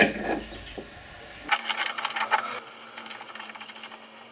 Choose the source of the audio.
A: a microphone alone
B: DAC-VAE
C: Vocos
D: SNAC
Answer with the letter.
A